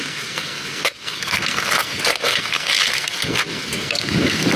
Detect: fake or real fake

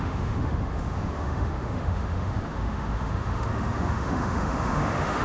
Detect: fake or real fake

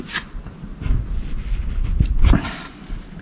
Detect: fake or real real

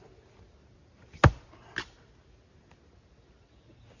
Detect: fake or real real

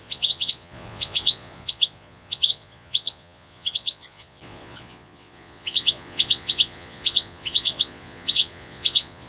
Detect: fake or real fake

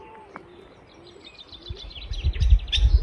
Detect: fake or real real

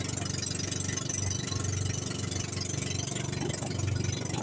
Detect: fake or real real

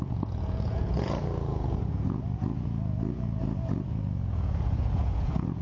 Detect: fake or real fake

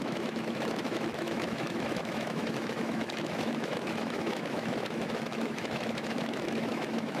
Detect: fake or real fake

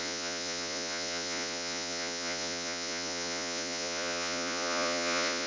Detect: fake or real fake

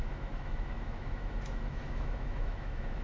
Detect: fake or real fake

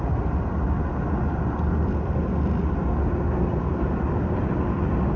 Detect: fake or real real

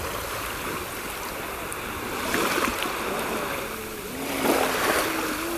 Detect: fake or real real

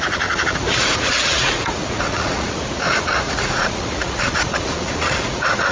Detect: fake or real fake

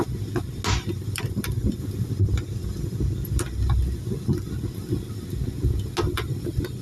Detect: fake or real real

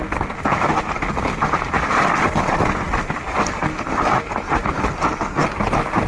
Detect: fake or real real